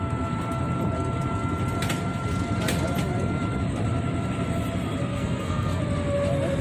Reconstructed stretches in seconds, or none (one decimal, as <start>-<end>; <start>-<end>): 5.1-5.8